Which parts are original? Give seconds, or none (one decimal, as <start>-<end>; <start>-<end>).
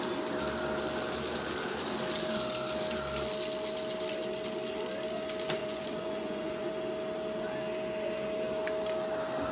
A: 0.0-5.6; 6.7-9.5